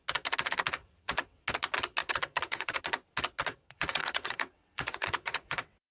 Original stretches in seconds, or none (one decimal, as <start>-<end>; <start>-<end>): 0.0-0.8; 1.4-2.0; 2.8-3.4